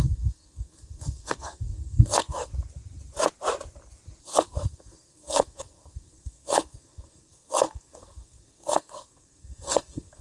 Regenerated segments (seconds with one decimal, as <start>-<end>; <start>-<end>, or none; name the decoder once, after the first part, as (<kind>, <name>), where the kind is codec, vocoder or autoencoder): 0.0-2.5 (codec, SNAC); 4.2-10.2